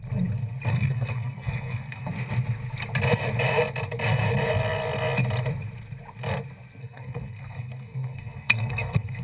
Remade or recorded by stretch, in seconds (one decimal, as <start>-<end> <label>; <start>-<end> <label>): 0.0-0.7 recorded; 0.7-2.1 remade; 2.1-6.8 recorded; 6.8-9.2 remade